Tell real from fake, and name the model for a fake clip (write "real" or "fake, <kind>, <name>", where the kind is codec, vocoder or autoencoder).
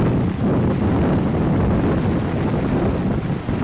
real